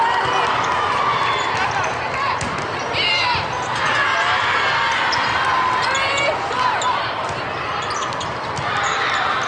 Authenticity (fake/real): real